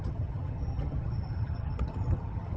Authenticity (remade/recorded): remade